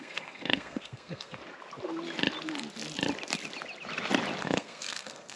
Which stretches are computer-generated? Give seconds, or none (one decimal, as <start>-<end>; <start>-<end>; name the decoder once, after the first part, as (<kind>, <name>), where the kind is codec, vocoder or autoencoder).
0.0-1.4 (codec, SNAC); 4.4-5.4